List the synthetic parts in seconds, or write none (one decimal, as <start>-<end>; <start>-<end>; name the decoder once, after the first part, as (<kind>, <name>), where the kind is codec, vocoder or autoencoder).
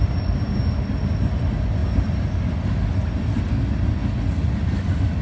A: none